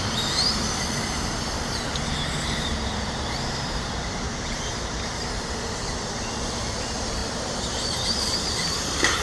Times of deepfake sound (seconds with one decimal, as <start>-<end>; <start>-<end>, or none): 0.0-9.2